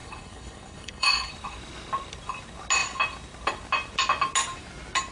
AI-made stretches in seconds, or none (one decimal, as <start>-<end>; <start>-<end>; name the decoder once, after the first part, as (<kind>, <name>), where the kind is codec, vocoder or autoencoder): 0.0-1.3 (codec, HILCodec)